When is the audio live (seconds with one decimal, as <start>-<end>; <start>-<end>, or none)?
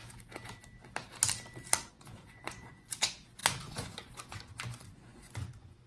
0.0-1.9